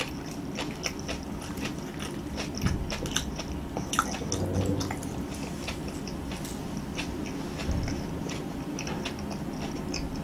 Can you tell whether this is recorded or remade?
recorded